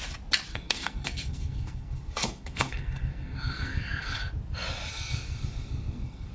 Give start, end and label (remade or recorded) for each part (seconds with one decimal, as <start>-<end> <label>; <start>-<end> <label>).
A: 0.0-0.5 recorded; 0.5-4.3 remade; 4.3-4.9 recorded; 4.9-6.3 remade